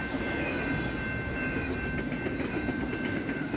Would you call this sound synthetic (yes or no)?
no